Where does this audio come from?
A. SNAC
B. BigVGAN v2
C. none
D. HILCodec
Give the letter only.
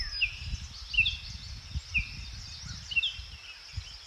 C